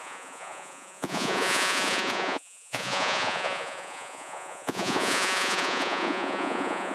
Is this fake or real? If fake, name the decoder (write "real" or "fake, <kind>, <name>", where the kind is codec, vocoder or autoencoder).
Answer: fake, vocoder, Vocos